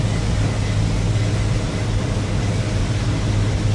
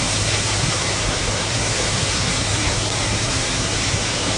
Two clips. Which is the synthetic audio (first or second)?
second